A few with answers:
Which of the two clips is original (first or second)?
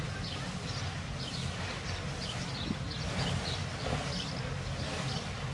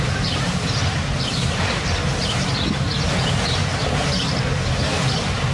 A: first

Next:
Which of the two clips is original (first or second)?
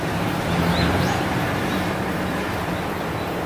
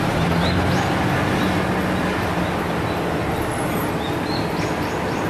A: second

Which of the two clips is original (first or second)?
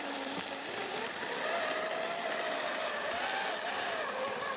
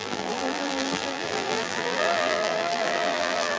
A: first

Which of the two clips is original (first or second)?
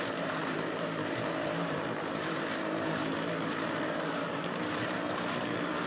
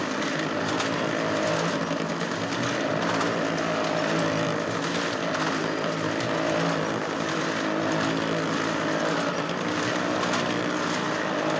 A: second